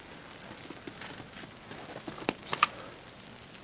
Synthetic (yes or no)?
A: no